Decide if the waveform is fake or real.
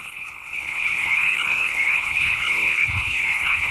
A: fake